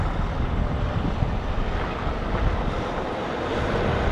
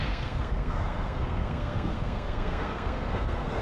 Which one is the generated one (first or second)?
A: second